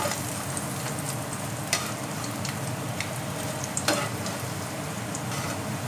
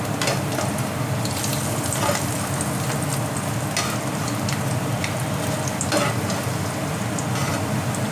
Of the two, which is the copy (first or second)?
first